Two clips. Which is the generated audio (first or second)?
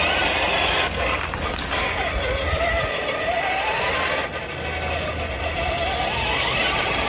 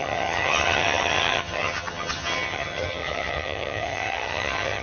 second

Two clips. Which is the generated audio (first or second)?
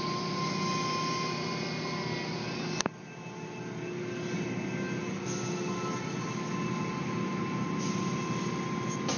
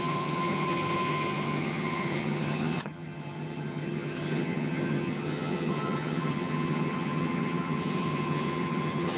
second